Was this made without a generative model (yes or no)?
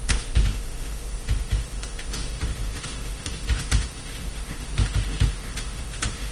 no